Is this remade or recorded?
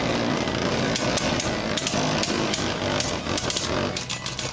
recorded